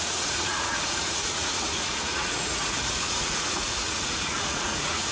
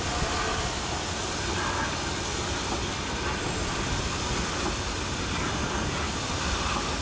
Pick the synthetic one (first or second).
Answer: first